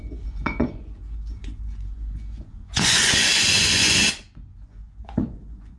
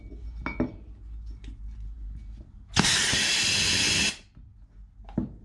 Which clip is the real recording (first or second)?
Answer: second